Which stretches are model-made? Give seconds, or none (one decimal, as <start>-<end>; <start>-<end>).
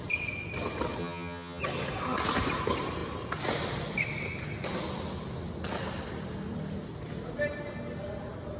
1.0-1.6